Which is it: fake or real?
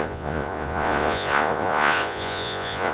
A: fake